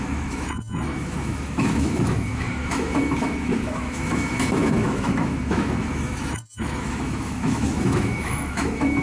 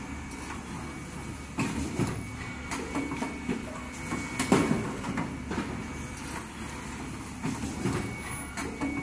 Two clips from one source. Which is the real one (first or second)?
second